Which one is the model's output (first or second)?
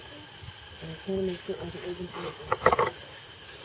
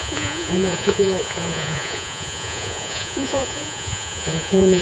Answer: second